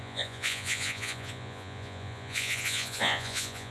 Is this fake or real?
fake